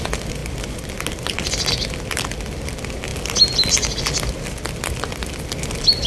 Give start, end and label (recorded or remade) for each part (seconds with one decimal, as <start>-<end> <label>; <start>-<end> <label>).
0.0-6.1 recorded